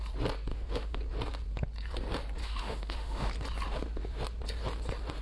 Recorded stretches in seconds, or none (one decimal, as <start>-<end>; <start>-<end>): 0.0-0.5; 1.0-2.4; 3.3-5.2